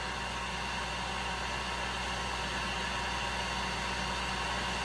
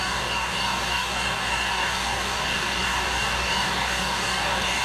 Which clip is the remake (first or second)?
second